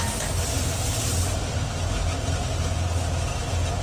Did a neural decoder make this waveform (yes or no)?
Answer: no